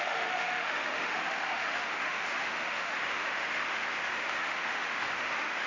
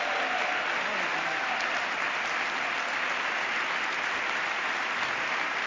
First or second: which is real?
second